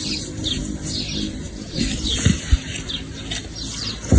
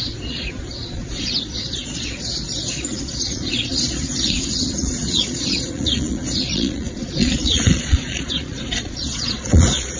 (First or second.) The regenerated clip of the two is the second